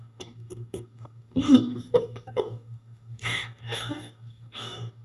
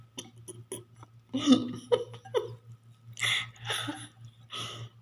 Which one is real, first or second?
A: second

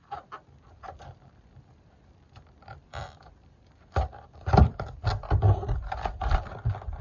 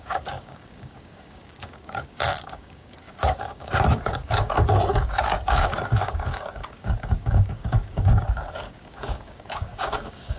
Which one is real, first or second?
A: first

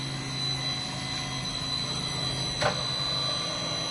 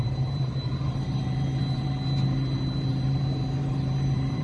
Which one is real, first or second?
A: first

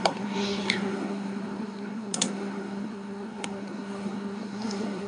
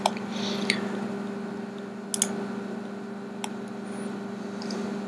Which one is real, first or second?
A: second